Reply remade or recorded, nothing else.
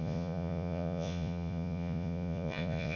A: remade